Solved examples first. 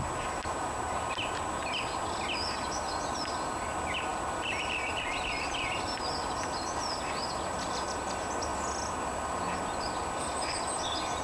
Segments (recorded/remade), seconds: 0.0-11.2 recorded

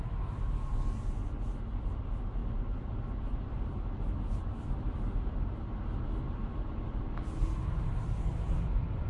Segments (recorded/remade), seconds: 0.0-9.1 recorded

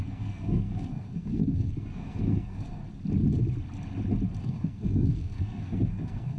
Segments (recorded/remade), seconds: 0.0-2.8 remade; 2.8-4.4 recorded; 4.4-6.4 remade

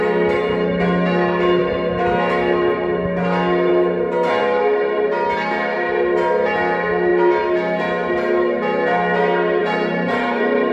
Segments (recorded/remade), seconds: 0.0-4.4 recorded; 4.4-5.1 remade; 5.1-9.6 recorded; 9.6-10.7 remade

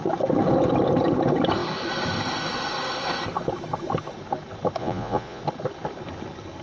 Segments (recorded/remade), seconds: 0.0-4.8 recorded; 4.8-5.4 remade; 5.4-6.6 recorded

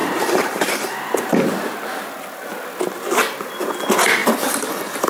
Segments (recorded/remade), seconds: 0.0-0.9 remade; 0.9-4.2 recorded; 4.2-5.1 remade